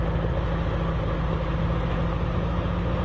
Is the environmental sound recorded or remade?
recorded